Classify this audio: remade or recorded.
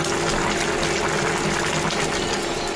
recorded